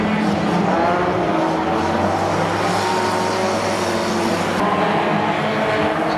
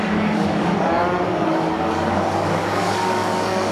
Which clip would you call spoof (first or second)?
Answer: second